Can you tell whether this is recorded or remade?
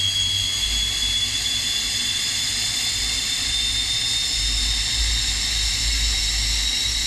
recorded